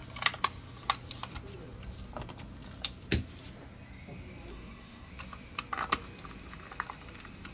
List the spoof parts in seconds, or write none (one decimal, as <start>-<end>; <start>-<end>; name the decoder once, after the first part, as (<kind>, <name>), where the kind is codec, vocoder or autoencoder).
4.5-5.1 (codec, SNAC)